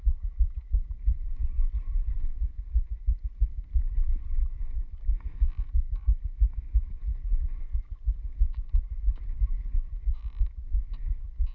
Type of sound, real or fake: real